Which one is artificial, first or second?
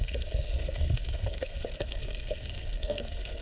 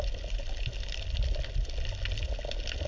first